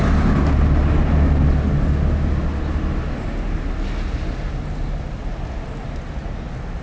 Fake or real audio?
real